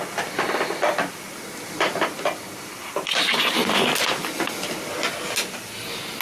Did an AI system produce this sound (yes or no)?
no